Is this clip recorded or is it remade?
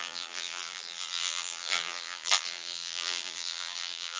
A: remade